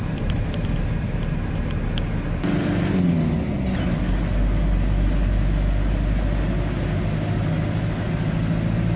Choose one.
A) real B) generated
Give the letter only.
A